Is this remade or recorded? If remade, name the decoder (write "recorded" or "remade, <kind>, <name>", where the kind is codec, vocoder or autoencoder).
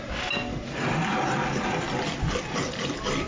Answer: recorded